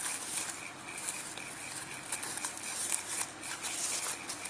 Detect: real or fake real